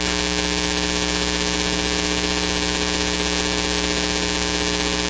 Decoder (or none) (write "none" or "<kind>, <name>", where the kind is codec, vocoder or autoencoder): none